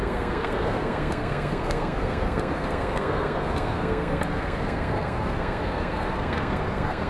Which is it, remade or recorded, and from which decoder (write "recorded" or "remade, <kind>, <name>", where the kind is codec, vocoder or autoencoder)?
remade, codec, SNAC